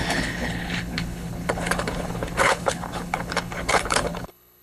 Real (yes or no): no